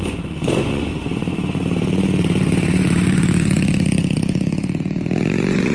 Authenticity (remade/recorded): remade